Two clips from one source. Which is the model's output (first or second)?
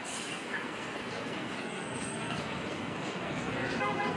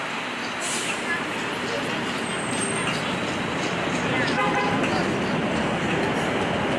first